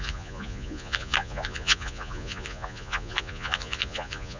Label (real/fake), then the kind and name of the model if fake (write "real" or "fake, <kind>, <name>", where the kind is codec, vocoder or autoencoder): fake, vocoder, Vocos